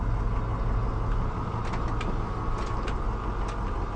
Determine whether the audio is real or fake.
real